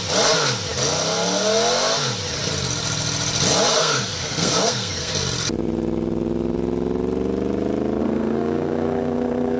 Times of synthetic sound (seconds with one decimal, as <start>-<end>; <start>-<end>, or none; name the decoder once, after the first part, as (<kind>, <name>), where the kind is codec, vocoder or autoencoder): 3.7-5.1 (codec, SNAC); 8.0-9.6